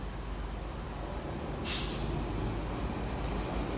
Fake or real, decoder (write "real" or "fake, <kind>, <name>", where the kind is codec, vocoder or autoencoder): real